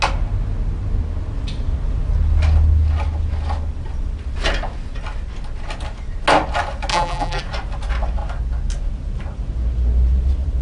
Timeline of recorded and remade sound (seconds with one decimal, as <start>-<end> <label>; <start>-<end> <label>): 0.0-6.9 recorded; 6.9-7.4 remade; 7.4-10.6 recorded